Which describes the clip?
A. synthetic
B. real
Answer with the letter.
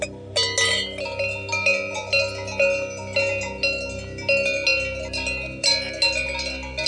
B